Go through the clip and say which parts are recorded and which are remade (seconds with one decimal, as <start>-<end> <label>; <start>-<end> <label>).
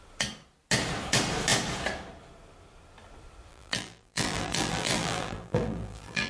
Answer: 0.0-3.5 recorded; 3.5-6.3 remade